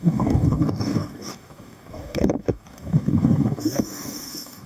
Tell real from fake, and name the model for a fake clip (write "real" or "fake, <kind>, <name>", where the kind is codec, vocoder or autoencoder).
fake, codec, DAC